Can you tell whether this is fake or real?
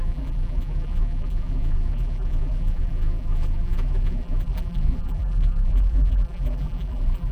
fake